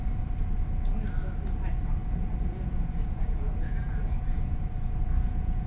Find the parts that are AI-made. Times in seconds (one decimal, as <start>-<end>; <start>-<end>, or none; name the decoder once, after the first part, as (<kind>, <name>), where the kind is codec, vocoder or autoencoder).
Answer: 2.0-5.7 (vocoder, Vocos)